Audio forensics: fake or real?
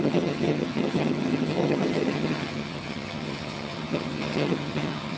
fake